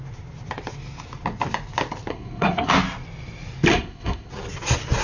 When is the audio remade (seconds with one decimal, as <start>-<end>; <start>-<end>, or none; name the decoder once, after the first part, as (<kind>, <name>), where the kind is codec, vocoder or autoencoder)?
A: 2.1-2.7 (codec, SNAC); 3.7-4.3